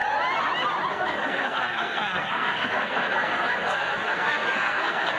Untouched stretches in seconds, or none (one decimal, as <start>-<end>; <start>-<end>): 0.0-0.9